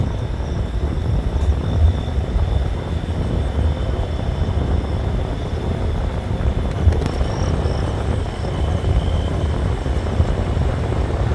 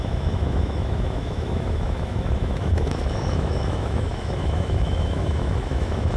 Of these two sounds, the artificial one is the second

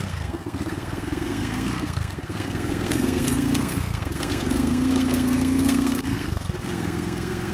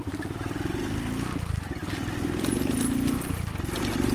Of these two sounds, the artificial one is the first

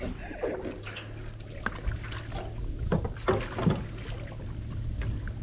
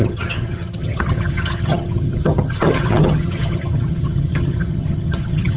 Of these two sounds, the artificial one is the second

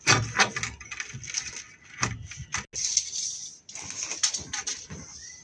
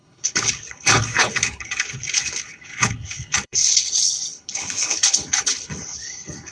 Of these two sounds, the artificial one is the second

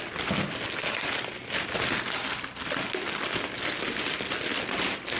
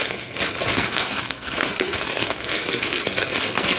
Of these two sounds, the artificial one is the second